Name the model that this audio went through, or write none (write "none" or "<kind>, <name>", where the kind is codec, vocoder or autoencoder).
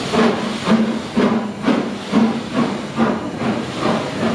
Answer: none